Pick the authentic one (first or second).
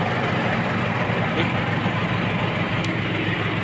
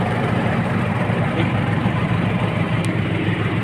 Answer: first